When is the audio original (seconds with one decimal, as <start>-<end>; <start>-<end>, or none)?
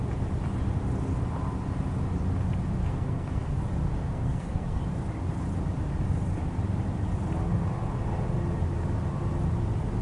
0.0-2.8; 3.6-4.0; 4.8-10.0